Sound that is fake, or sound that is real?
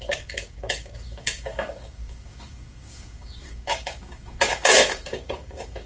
fake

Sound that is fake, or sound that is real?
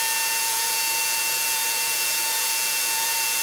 fake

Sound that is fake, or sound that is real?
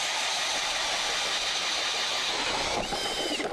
fake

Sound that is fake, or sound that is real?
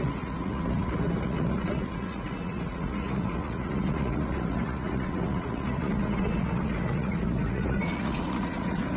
fake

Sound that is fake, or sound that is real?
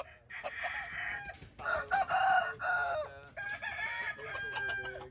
real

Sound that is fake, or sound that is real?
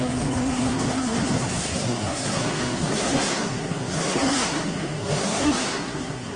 fake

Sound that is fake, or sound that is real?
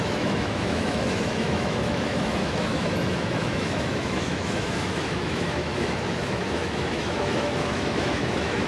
fake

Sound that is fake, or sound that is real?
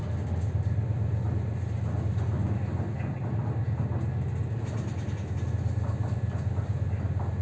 real